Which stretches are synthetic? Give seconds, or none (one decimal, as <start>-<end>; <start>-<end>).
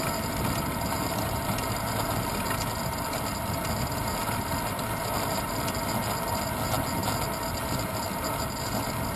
none